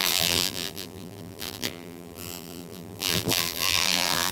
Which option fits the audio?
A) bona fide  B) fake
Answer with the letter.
B